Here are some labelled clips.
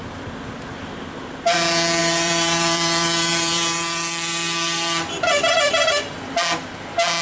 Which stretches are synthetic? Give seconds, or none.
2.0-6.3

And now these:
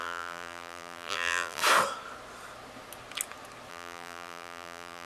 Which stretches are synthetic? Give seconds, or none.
0.0-1.6; 3.7-5.0

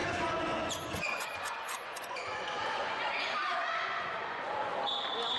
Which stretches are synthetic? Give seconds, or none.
0.0-4.7

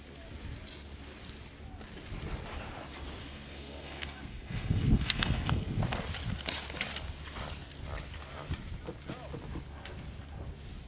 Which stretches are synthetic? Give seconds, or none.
3.2-5.8

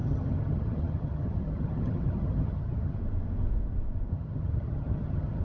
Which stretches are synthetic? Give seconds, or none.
0.0-3.0; 4.1-5.4

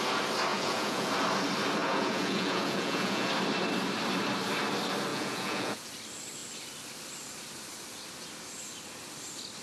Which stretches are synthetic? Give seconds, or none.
0.5-1.1; 1.8-3.3; 5.1-5.9